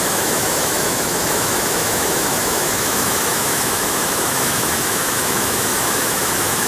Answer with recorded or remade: remade